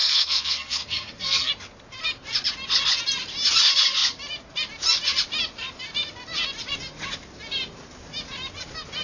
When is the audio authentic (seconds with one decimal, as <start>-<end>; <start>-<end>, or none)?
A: 1.5-9.0